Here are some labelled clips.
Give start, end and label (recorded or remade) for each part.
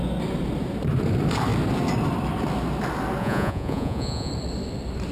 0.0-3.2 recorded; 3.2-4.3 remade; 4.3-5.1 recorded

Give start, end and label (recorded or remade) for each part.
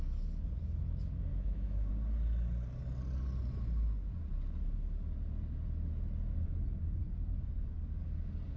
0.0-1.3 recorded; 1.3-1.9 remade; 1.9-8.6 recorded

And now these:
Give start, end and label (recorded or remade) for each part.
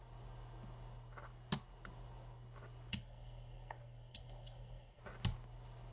0.0-2.9 recorded; 2.9-5.0 remade; 5.0-5.9 recorded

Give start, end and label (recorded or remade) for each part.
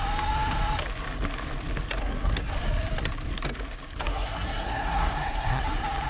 0.0-2.0 recorded; 2.0-2.5 remade; 2.5-4.1 recorded; 4.1-5.6 remade; 5.6-6.1 recorded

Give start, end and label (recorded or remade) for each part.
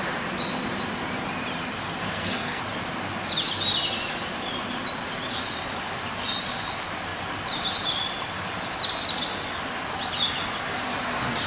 0.0-2.0 recorded; 2.0-2.6 remade; 2.6-11.5 recorded